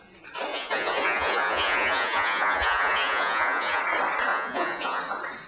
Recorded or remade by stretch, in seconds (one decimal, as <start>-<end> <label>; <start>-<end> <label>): 0.0-0.5 recorded; 0.5-3.8 remade; 3.8-4.3 recorded; 4.3-5.0 remade; 5.0-5.5 recorded